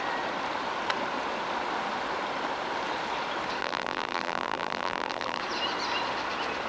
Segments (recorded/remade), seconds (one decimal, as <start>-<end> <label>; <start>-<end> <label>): 0.0-3.6 recorded; 3.6-5.4 remade; 5.4-6.7 recorded